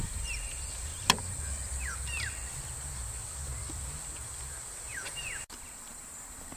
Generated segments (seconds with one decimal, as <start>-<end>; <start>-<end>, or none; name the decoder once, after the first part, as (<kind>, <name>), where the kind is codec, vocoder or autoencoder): 3.2-6.6 (vocoder, BigVGAN v2)

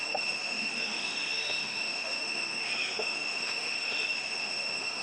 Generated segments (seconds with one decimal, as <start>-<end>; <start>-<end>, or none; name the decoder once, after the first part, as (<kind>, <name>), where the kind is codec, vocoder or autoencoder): 0.0-5.0 (autoencoder, DAC-VAE)